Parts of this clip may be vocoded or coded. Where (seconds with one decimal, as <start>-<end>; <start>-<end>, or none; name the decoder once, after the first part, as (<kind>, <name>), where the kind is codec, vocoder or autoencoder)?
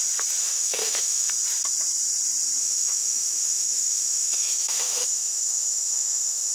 0.4-1.3 (autoencoder, DAC-VAE); 2.6-6.5